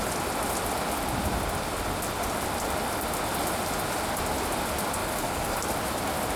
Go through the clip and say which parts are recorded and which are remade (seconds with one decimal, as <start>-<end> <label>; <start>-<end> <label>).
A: 0.0-5.0 recorded; 5.0-5.6 remade; 5.6-6.4 recorded